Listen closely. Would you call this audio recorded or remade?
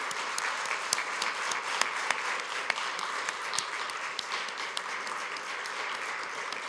recorded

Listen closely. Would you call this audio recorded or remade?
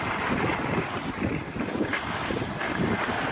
recorded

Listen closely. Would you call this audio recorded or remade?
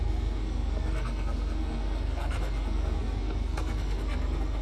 remade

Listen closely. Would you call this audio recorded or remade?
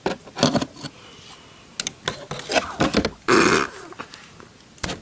recorded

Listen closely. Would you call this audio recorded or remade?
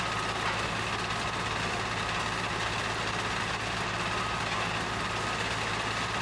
recorded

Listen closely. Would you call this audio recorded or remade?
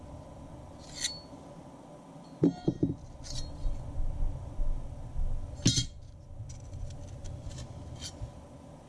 recorded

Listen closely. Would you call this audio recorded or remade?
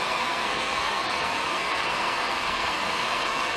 remade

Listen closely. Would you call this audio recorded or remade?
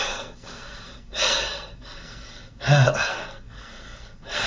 remade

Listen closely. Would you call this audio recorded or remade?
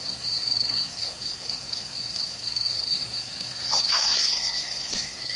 remade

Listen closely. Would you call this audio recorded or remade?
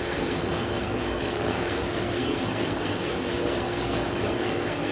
remade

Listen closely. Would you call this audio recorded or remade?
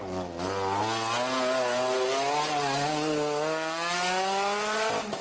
recorded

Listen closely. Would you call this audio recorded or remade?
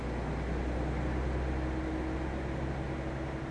recorded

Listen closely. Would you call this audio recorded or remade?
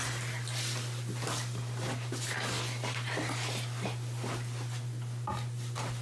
recorded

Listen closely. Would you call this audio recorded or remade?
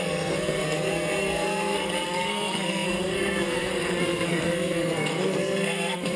remade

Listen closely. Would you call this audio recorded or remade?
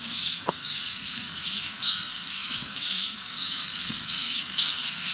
remade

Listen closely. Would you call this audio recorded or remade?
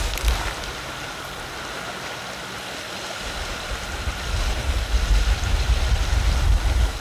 recorded